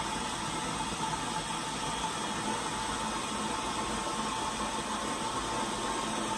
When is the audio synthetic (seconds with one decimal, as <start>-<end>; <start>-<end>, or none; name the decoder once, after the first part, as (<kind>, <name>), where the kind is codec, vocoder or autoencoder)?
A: none